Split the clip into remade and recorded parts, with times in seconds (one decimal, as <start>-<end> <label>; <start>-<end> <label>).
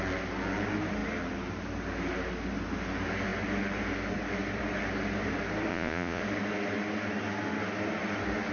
0.0-5.7 recorded; 5.7-6.2 remade; 6.2-8.5 recorded